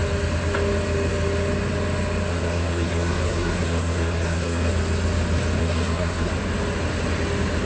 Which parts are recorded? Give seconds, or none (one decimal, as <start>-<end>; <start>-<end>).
0.0-2.3; 4.7-5.6; 6.3-7.7